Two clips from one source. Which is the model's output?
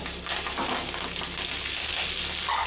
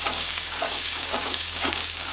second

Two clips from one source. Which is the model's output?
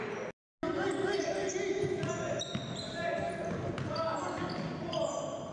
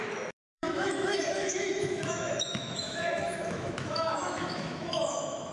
second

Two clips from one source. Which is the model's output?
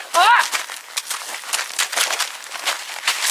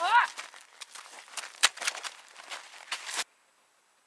second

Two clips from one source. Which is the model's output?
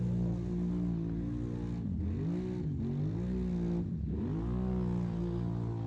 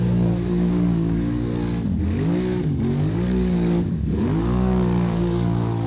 second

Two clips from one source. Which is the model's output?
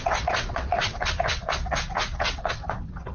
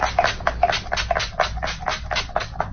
first